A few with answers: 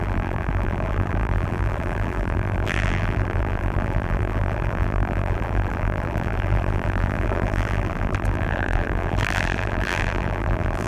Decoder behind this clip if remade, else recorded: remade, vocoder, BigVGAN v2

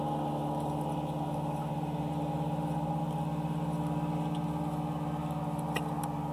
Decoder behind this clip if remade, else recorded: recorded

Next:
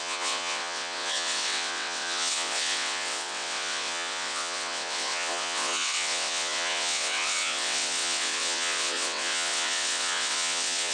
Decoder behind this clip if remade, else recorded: remade, vocoder, WaveNeXt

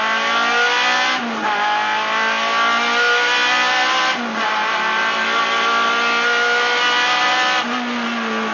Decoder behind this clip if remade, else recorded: recorded